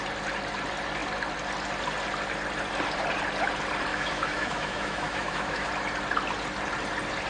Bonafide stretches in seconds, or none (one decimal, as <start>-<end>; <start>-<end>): 0.0-3.9; 5.7-7.3